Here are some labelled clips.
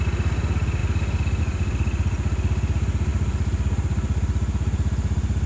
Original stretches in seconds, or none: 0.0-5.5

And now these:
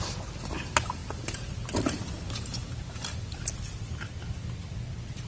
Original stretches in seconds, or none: 0.0-5.3